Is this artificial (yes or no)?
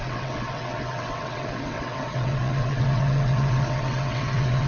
yes